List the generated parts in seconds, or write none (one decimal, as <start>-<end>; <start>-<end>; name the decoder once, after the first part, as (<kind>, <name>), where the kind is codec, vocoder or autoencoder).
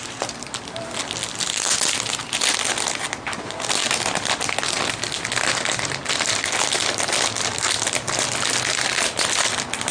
none